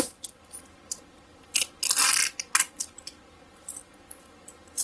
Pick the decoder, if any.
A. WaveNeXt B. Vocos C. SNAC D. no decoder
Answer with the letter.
D